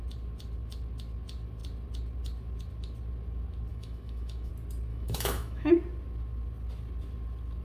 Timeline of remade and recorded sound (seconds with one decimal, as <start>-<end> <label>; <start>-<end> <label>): 0.0-3.7 recorded; 3.7-4.5 remade; 4.5-4.9 recorded; 4.9-5.7 remade; 5.7-7.6 recorded